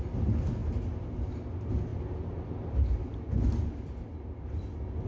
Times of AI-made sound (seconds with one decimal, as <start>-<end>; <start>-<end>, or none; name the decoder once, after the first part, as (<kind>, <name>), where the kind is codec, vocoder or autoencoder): none